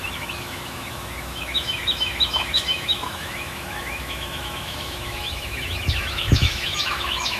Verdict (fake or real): fake